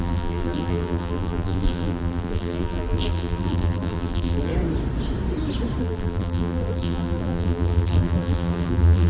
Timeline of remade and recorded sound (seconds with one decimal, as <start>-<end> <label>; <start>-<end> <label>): 0.0-4.5 remade; 4.5-5.8 recorded; 5.8-9.1 remade